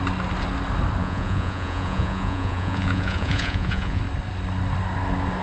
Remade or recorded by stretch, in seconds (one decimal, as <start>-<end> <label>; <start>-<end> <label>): 0.0-1.0 recorded; 1.0-4.0 remade; 4.0-5.4 recorded